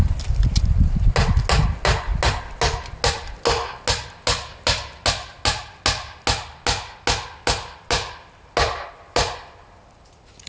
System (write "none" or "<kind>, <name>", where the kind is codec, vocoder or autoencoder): none